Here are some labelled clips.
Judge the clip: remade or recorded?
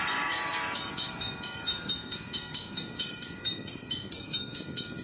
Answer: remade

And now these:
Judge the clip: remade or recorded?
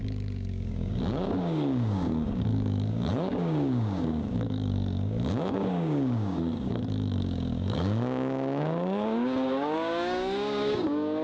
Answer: remade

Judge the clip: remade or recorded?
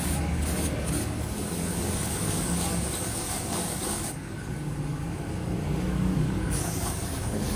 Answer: remade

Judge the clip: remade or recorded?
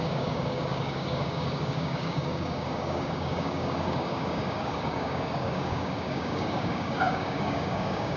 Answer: remade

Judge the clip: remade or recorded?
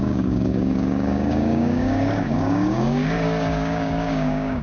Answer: remade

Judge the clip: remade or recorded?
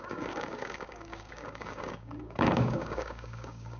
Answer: remade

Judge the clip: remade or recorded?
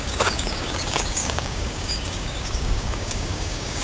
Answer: remade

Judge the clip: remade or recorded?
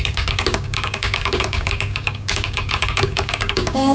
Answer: remade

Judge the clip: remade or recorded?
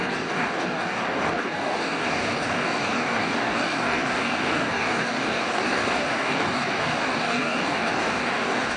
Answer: remade